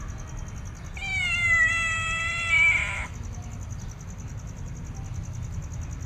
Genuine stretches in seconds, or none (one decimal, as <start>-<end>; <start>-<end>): 0.0-1.0; 4.7-6.1